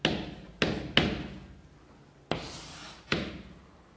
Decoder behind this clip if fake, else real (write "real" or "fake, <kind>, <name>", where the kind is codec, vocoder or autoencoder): real